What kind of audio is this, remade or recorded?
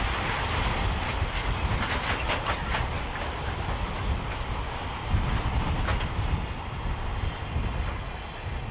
recorded